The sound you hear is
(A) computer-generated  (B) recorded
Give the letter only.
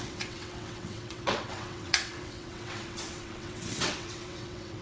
A